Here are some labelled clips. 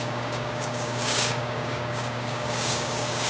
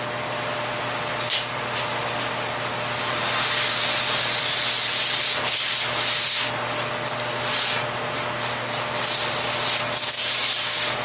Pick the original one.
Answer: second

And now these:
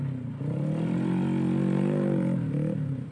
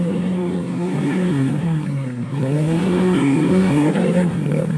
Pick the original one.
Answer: first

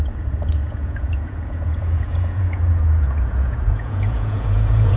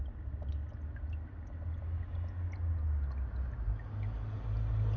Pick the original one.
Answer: second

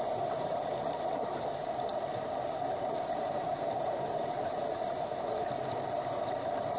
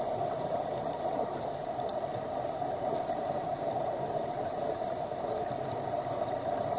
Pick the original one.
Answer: first